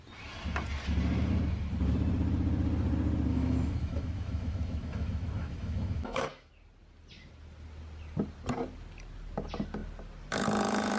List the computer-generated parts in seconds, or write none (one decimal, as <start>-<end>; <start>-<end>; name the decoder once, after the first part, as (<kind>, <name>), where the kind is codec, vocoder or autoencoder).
3.3-6.5 (autoencoder, DAC-VAE)